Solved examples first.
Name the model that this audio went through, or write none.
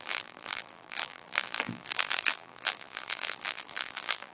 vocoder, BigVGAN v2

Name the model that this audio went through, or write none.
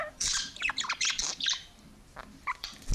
vocoder, BigVGAN v2